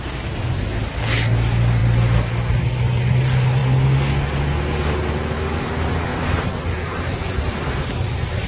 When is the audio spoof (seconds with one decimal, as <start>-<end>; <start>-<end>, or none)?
0.0-1.8; 3.0-3.6; 4.4-6.1; 7.7-8.5